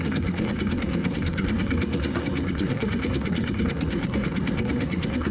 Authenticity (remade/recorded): remade